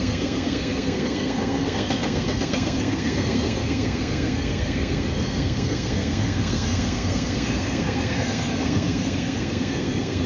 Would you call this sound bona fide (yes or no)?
no